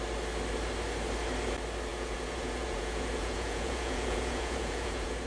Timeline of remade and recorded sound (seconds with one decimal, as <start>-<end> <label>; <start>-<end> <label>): 0.0-1.9 recorded; 1.9-5.3 remade